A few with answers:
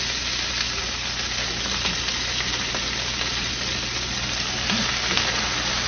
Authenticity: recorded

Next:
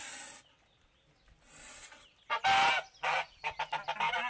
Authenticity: recorded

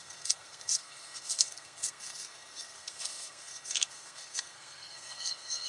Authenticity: remade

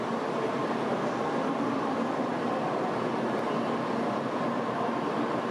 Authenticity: recorded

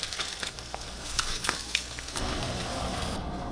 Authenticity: remade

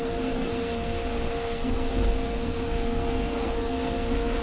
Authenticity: remade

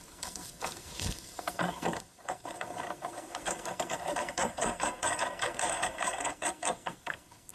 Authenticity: remade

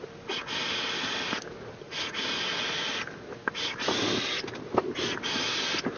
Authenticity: recorded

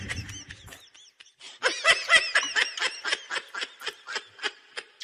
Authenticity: recorded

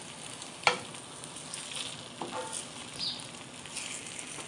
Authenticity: recorded